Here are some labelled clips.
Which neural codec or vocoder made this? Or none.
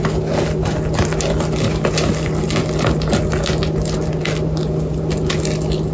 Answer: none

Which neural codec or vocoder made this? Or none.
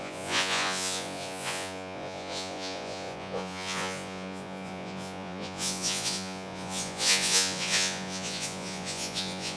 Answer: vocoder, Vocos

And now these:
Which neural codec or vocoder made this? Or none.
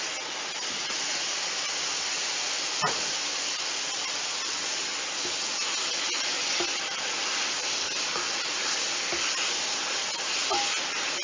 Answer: none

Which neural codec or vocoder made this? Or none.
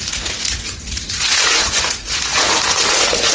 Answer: vocoder, Vocos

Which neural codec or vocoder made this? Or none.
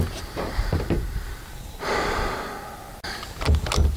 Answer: none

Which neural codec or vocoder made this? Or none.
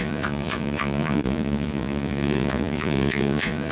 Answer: vocoder, Vocos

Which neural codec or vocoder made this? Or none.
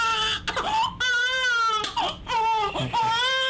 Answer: none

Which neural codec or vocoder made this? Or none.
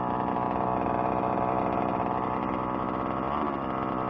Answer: none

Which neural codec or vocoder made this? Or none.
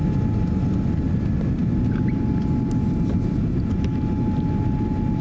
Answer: none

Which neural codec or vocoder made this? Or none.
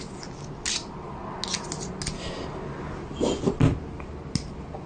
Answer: none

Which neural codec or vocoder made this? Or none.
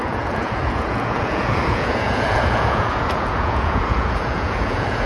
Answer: vocoder, Vocos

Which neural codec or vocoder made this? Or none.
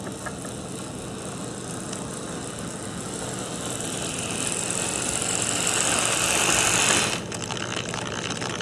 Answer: none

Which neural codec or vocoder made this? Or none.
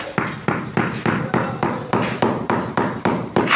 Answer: none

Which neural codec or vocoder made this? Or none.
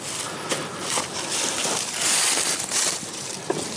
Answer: none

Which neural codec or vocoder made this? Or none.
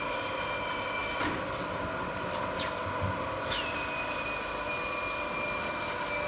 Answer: none